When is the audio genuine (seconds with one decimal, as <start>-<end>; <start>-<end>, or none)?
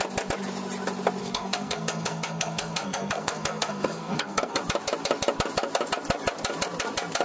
0.0-1.2; 4.6-7.2